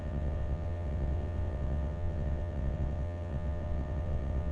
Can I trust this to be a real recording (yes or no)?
no